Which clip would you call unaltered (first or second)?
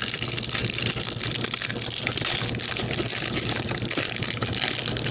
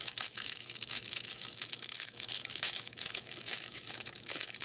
first